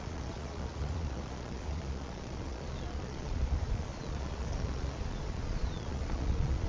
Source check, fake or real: fake